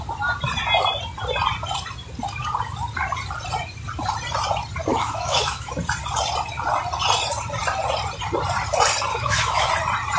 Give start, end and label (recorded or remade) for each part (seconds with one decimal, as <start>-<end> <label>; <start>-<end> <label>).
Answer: 0.0-4.9 recorded; 4.9-5.7 remade; 5.7-9.1 recorded; 9.1-9.7 remade; 9.7-10.2 recorded